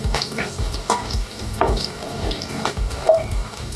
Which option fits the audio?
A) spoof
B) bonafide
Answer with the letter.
A